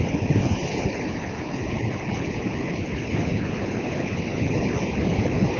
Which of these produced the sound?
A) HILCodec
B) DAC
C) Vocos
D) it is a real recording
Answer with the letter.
A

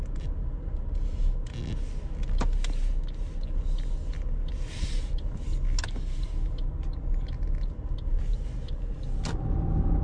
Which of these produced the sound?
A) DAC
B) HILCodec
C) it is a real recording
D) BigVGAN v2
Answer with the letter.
C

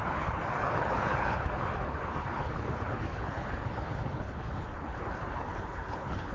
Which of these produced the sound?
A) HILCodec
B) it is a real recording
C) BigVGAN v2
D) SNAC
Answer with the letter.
A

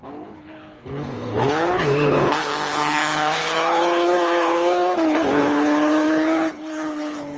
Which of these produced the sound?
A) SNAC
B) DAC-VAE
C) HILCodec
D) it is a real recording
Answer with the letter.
C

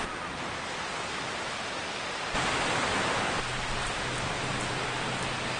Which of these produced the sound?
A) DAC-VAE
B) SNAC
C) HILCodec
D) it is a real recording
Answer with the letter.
D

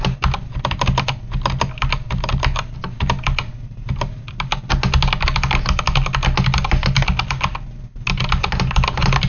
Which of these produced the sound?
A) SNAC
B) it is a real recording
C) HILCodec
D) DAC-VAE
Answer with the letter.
B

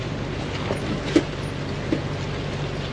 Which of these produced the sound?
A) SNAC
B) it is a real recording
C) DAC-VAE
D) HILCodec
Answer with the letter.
B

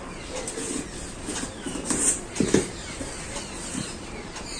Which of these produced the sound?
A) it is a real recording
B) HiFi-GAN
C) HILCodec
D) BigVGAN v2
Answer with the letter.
A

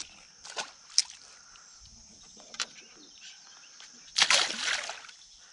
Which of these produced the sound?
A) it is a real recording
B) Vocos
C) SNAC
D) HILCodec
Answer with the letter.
A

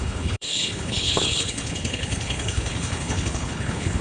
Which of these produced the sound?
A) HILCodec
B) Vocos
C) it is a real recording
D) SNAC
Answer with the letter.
A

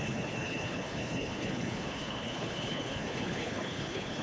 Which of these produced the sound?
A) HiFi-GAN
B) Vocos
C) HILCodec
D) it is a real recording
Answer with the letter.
C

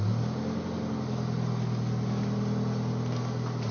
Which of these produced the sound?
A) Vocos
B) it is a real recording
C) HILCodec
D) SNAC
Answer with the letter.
B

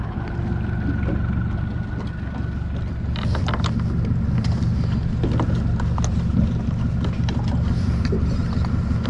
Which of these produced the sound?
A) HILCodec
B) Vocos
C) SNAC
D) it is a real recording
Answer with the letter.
D